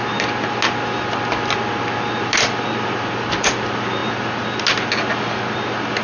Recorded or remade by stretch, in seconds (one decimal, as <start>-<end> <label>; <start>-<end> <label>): 0.0-6.0 recorded